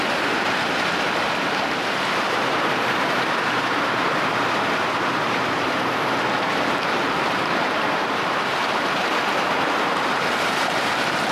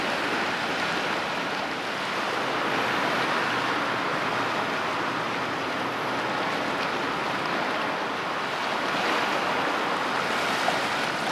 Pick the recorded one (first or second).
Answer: second